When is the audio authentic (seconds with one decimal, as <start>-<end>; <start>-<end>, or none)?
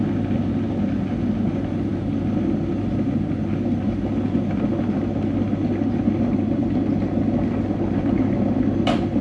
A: 0.0-9.2